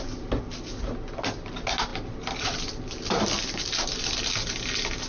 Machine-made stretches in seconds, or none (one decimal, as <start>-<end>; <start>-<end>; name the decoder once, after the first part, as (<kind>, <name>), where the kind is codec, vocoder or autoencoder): none